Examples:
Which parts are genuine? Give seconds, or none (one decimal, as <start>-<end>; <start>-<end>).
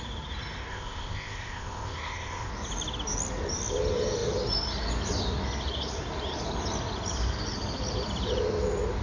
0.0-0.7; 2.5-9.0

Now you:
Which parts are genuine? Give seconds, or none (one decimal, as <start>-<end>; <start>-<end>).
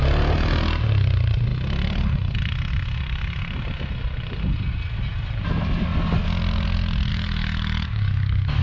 0.0-7.1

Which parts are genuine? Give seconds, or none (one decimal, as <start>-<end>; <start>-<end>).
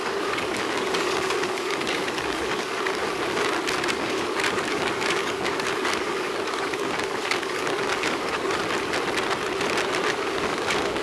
3.0-3.9; 8.6-10.1